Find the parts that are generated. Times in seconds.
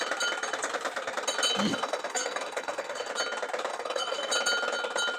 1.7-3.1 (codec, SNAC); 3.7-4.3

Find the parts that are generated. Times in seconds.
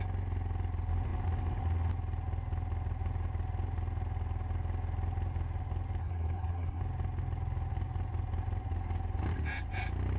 6.0-6.8 (codec, SNAC)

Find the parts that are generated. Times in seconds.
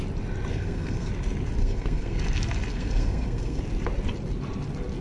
0.5-1.1 (codec, SNAC); 1.6-2.2; 2.7-3.6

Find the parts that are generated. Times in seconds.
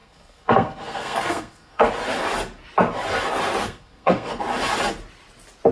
0.0-1.9 (codec, SNAC); 3.6-4.4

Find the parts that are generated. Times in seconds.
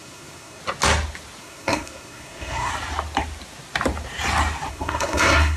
0.0-0.6 (codec, SNAC); 1.4-2.7; 4.7-5.6